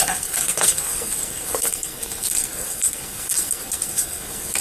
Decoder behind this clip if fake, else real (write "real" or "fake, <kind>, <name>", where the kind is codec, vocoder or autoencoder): fake, codec, SNAC